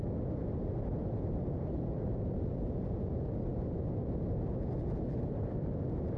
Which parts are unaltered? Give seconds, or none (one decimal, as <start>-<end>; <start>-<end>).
0.0-6.2